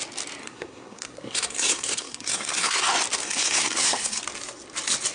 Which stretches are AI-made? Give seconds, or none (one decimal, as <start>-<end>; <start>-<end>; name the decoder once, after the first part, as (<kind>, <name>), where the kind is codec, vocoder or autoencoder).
0.4-2.8 (codec, SNAC); 3.2-4.2